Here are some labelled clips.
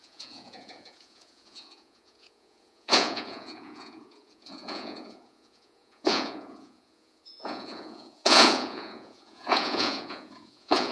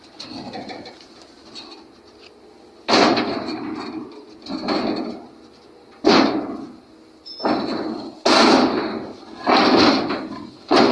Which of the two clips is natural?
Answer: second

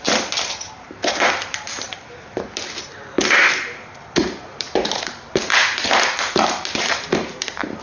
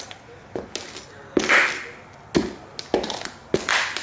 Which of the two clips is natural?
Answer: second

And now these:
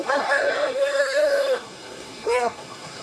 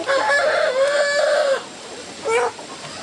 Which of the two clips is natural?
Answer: second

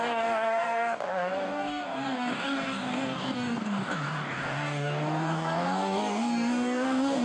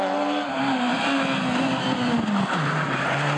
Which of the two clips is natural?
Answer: second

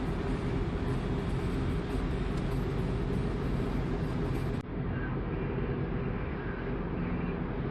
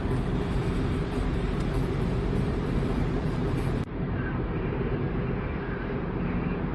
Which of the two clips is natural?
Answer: first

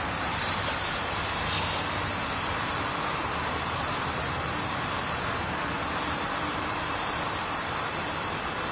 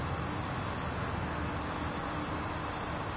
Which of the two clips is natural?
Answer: second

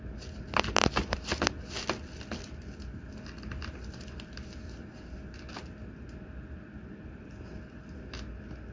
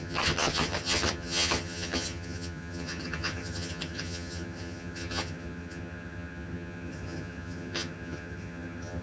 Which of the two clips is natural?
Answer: first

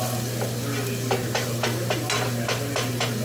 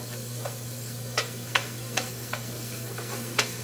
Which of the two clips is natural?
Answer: first